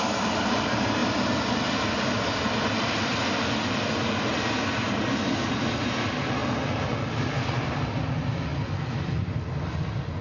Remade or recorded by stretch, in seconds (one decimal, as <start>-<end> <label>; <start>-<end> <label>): 0.0-10.2 recorded